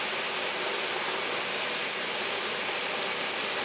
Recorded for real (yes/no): yes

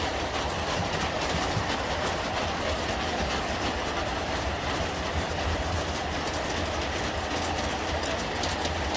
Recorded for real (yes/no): yes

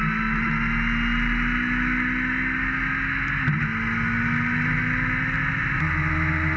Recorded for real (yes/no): yes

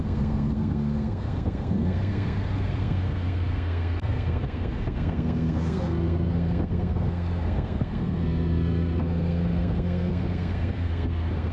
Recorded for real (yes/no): no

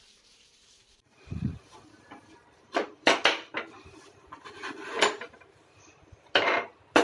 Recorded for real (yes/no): no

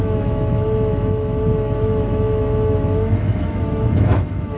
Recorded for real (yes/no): no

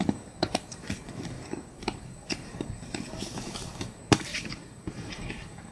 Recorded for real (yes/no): no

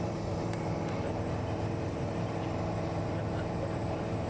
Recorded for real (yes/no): no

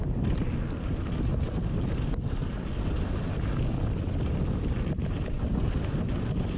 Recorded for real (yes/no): yes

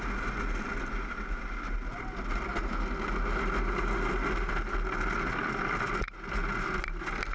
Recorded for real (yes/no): yes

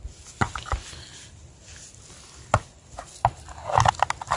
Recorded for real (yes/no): yes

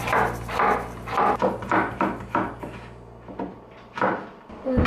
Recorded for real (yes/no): yes